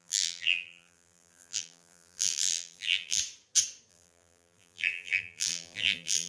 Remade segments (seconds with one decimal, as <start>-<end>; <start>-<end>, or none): 0.0-3.2; 3.9-6.3